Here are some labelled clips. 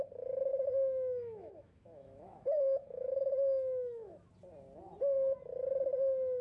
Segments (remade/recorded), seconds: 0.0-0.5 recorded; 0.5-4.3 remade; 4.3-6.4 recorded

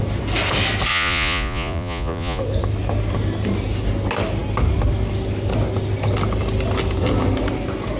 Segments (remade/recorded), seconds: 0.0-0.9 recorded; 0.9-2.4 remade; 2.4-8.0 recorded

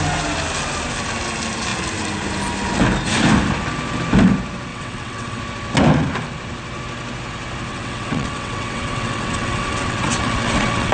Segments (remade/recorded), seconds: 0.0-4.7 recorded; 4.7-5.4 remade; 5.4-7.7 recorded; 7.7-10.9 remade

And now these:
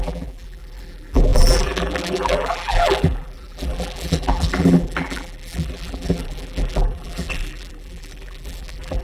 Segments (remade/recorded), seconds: 0.0-9.0 remade